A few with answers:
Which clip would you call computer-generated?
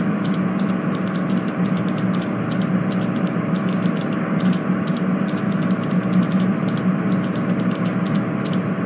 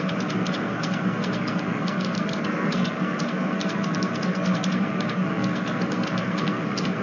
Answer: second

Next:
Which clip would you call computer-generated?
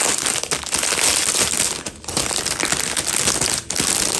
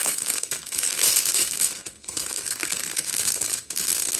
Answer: second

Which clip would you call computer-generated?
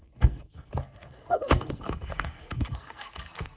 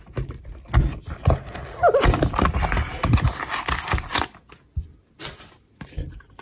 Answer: first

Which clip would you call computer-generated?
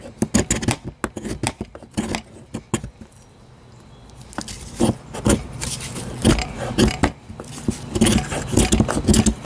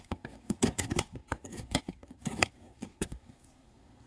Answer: second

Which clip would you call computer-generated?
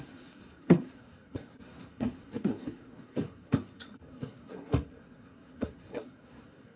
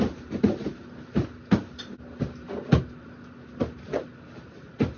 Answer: first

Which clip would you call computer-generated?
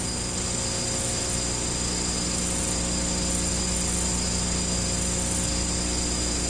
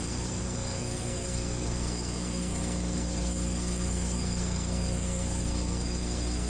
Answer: second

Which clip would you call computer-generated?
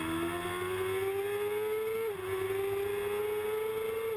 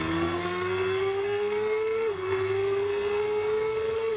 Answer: second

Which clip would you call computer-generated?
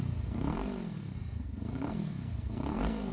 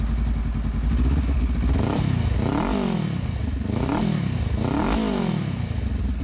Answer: first